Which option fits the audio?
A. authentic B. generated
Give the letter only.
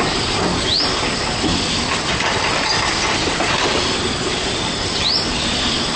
A